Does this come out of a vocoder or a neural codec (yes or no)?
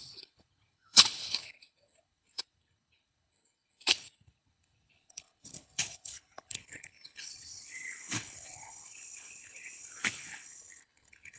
yes